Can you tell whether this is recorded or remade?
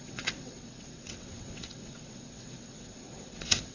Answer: remade